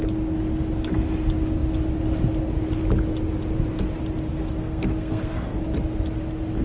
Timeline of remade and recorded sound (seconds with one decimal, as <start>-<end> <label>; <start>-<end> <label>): 0.0-4.3 recorded; 4.3-5.6 remade; 5.6-6.6 recorded